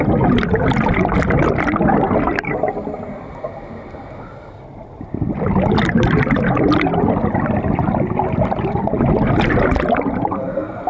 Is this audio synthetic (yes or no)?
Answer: no